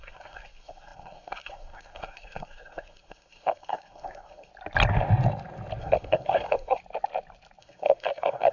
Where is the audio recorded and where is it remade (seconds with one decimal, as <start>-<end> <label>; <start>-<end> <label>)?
0.0-4.5 remade; 4.5-5.8 recorded; 5.8-6.8 remade; 6.8-7.6 recorded; 7.6-8.5 remade